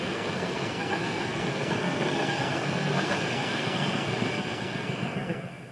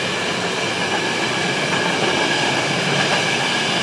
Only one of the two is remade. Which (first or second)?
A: first